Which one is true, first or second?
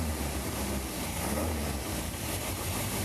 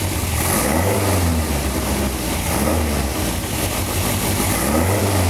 second